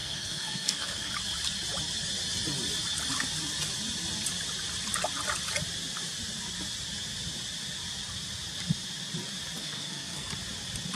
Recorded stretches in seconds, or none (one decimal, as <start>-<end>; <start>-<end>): 1.1-9.6; 10.3-11.0